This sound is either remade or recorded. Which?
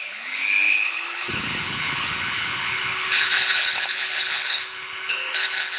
remade